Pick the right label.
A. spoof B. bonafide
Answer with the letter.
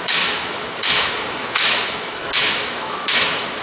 A